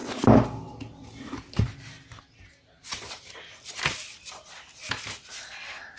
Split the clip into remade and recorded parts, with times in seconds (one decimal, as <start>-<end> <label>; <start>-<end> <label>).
0.0-6.0 recorded